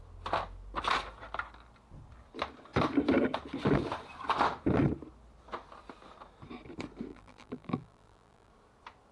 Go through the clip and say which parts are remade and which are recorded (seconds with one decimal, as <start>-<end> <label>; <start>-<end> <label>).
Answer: 0.0-7.1 recorded; 7.1-8.5 remade; 8.5-9.1 recorded